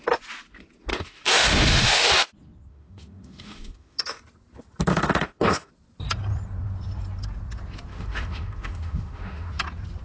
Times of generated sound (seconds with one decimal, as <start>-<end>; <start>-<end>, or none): 0.9-2.1; 2.7-4.2; 4.9-5.7; 7.9-9.6